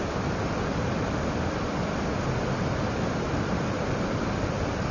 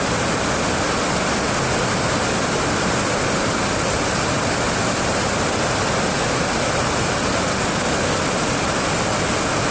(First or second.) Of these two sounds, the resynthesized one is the first